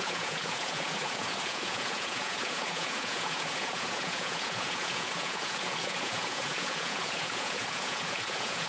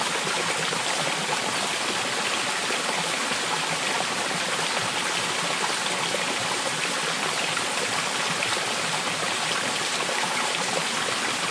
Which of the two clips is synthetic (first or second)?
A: first